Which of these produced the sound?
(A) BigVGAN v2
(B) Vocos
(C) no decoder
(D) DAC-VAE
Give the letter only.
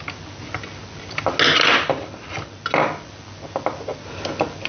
C